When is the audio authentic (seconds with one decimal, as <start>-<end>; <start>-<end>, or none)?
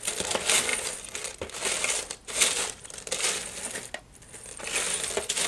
0.0-5.5